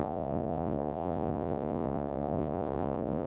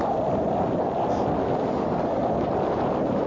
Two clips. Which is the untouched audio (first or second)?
second